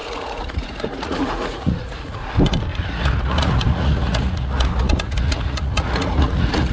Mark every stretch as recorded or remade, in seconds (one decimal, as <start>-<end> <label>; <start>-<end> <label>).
0.0-2.3 remade; 2.3-2.7 recorded; 2.7-6.7 remade